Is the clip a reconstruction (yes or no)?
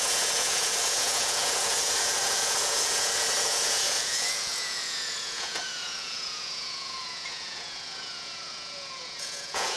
yes